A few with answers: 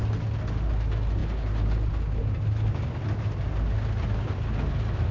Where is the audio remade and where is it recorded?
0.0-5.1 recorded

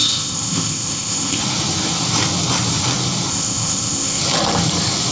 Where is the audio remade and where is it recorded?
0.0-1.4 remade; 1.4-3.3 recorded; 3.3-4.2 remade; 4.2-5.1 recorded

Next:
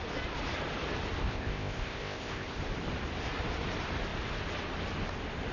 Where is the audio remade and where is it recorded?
0.0-1.2 recorded; 1.2-2.6 remade; 2.6-5.5 recorded

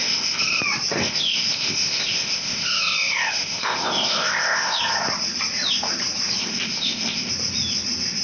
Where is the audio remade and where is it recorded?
0.0-0.6 remade; 0.6-1.0 recorded; 1.0-4.8 remade; 4.8-6.4 recorded; 6.4-7.3 remade; 7.3-8.2 recorded

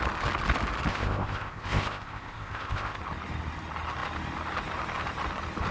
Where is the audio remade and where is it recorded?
0.0-0.9 recorded; 0.9-3.0 remade; 3.0-5.7 recorded